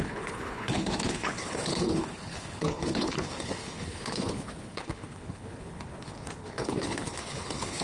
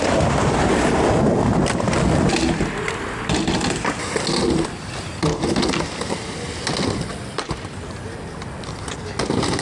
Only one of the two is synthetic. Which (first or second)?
first